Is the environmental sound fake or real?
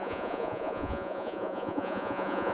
fake